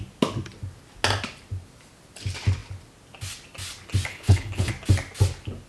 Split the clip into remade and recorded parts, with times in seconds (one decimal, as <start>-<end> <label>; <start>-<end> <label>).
0.0-4.1 recorded; 4.1-4.7 remade; 4.7-5.7 recorded